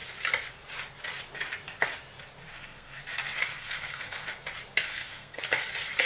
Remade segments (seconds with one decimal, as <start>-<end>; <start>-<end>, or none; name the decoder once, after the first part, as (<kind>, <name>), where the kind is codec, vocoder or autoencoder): 2.5-3.0 (codec, SNAC); 3.5-4.3; 4.9-5.4